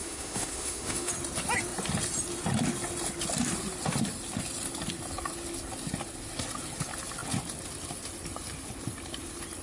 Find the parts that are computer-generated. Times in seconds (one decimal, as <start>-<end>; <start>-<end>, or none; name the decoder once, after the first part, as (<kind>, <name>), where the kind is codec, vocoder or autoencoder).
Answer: 0.0-1.1 (autoencoder, DAC-VAE)